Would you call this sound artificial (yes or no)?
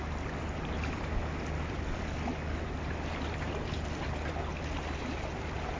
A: no